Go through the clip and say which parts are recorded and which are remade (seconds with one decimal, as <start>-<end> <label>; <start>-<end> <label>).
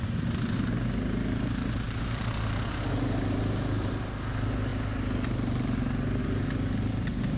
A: 0.0-7.4 recorded